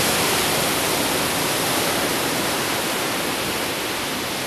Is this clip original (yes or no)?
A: yes